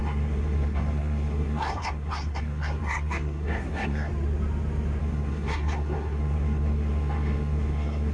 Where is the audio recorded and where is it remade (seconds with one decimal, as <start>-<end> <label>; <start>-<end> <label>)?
0.0-4.1 remade; 4.1-5.0 recorded; 5.0-8.1 remade